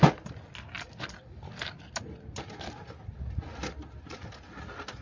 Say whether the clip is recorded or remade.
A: recorded